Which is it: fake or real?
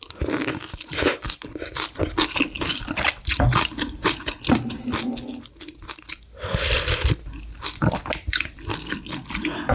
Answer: real